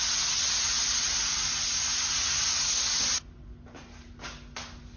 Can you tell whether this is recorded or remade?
recorded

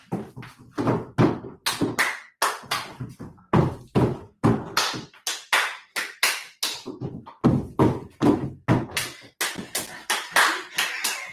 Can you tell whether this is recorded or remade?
recorded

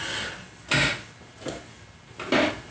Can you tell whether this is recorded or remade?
recorded